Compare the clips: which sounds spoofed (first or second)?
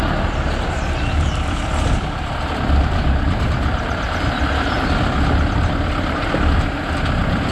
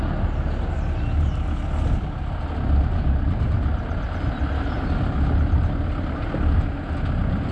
first